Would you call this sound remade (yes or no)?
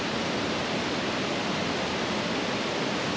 no